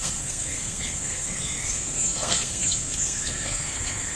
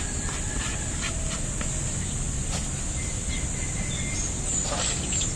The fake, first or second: first